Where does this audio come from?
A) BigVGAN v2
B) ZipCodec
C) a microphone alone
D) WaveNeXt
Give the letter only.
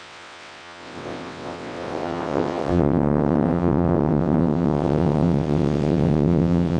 D